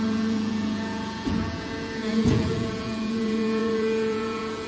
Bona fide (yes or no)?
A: no